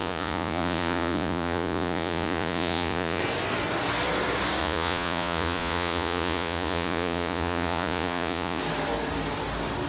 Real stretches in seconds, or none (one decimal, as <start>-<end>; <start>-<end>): 3.2-4.6; 8.6-9.9